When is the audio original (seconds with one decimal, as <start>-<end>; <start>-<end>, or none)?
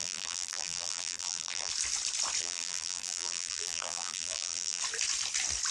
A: 1.7-2.4; 4.8-5.7